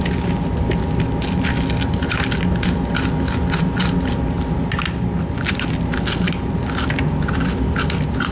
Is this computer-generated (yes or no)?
no